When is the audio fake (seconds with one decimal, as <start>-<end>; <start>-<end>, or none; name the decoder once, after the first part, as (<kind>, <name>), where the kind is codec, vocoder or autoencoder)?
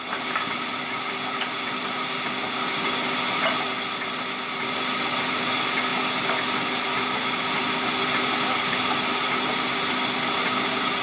none